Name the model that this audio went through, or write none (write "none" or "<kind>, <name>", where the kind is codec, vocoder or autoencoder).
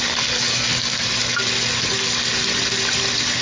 none